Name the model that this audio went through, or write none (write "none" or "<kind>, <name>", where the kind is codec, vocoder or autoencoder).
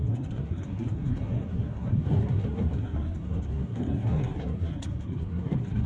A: codec, SNAC